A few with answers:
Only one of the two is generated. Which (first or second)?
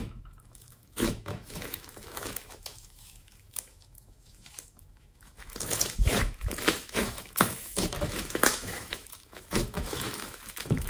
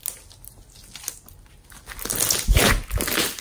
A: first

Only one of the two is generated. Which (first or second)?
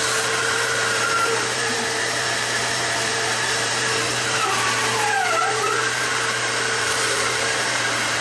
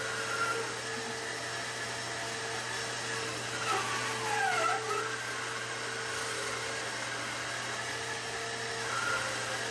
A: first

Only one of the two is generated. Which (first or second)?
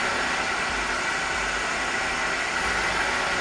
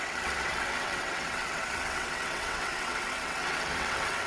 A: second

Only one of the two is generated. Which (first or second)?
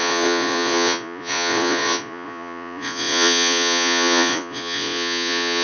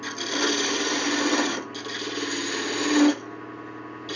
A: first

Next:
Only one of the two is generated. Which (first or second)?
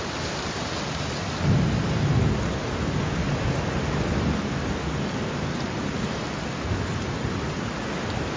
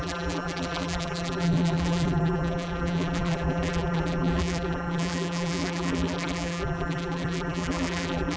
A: second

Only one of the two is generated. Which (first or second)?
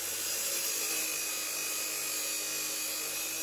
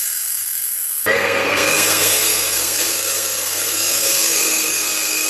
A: second